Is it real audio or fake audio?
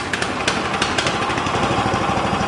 fake